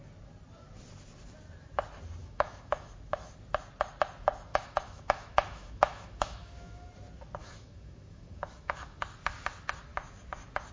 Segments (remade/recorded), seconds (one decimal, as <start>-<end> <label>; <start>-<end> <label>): 0.0-2.2 recorded; 2.2-2.9 remade; 2.9-4.5 recorded; 4.5-6.9 remade; 6.9-7.4 recorded; 7.4-9.0 remade; 9.0-10.7 recorded